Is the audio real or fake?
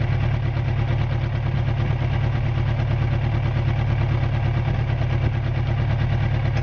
real